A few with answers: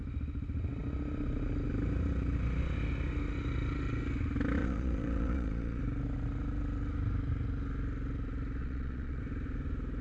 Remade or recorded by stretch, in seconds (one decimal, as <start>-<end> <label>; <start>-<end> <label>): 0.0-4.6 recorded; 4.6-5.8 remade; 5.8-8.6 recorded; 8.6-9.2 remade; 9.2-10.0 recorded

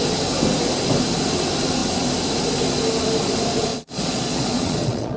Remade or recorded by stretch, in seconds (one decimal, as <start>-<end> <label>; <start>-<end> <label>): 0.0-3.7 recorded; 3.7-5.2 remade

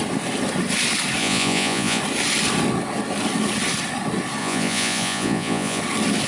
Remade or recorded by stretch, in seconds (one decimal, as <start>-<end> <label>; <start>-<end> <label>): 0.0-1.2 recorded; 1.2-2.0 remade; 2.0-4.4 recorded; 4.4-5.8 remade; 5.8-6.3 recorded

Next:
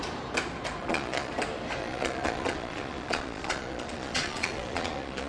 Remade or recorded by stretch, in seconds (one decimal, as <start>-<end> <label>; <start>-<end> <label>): 0.0-0.8 recorded; 0.8-1.3 remade; 1.3-1.8 recorded; 1.8-5.3 remade

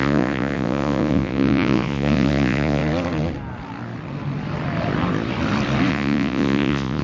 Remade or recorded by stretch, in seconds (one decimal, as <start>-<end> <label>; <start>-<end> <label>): 0.0-2.8 remade; 2.8-5.9 recorded; 5.9-7.0 remade

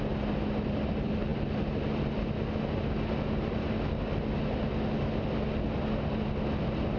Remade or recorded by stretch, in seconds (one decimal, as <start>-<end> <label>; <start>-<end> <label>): 0.0-7.0 recorded